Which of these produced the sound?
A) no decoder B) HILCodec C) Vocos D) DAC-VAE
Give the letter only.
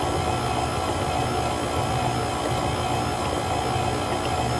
A